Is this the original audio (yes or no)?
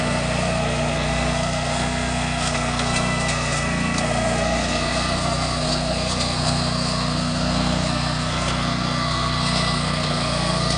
no